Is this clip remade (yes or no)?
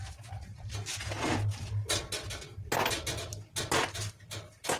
no